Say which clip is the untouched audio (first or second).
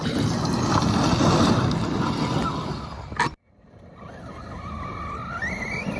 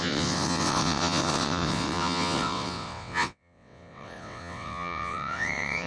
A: first